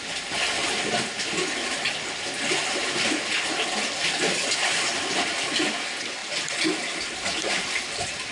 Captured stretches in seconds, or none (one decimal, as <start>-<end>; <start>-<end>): 0.0-8.3